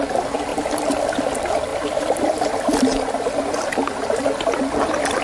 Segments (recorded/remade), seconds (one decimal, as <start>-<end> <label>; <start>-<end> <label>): 0.0-0.5 recorded; 0.5-1.2 remade; 1.2-1.7 recorded; 1.7-3.7 remade; 3.7-5.2 recorded

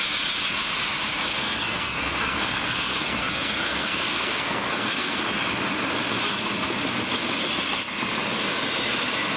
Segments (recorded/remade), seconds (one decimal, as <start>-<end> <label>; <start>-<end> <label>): 0.0-1.3 recorded; 1.3-5.2 remade; 5.2-9.4 recorded

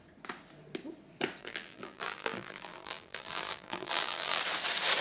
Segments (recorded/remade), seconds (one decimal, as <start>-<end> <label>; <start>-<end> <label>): 0.0-1.4 recorded; 1.4-4.4 remade; 4.4-5.0 recorded